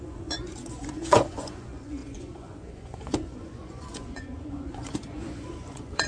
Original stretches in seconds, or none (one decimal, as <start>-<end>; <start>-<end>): none